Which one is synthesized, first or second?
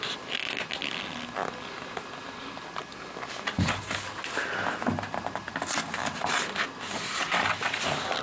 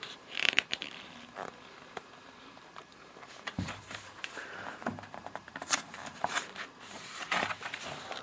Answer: second